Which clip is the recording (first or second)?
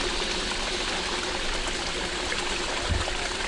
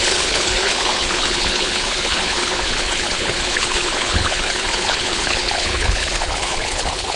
first